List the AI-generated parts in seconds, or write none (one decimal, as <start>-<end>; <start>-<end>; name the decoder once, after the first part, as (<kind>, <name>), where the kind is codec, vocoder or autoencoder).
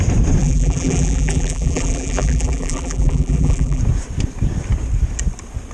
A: 0.4-3.8 (vocoder, BigVGAN v2)